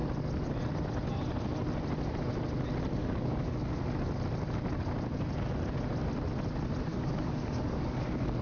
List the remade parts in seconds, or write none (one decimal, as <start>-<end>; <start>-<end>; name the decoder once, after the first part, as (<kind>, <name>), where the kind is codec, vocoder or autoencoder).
3.0-3.8 (codec, DAC); 6.9-8.4